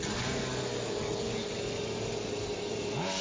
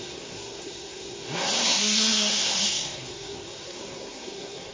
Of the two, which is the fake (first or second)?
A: second